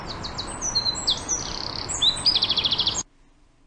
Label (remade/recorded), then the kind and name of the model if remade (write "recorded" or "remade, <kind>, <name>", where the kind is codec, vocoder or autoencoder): recorded